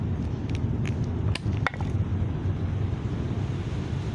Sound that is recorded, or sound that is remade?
recorded